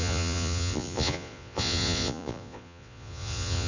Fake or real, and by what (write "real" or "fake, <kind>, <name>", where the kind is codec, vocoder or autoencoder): fake, vocoder, Vocos